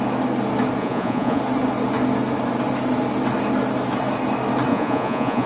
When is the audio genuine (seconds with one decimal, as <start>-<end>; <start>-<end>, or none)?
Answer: 0.0-0.8; 1.4-4.7